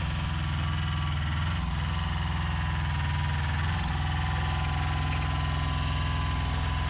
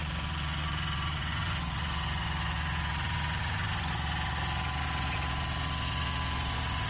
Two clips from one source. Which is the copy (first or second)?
second